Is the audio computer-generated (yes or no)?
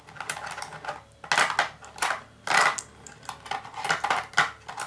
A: no